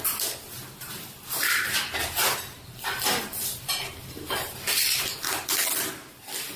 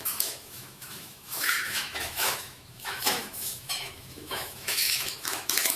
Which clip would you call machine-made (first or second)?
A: second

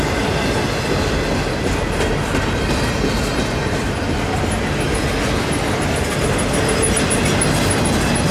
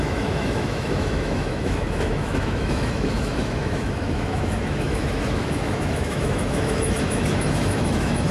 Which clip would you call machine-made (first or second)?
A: second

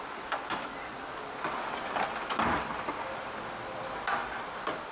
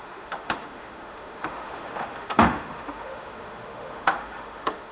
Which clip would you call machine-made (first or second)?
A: second